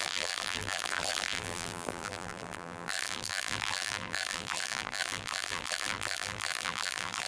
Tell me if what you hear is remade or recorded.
remade